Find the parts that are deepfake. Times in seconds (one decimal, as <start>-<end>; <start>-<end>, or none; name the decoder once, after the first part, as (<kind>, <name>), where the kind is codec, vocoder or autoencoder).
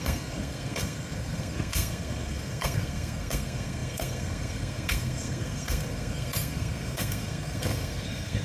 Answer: 0.0-8.4 (codec, SNAC)